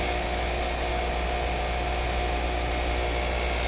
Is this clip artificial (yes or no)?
no